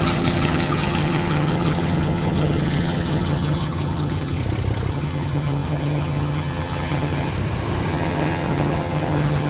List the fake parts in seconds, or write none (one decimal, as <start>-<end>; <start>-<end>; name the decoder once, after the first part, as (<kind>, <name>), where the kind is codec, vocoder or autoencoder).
0.0-4.4 (vocoder, HiFi-GAN); 4.9-7.3; 7.9-9.5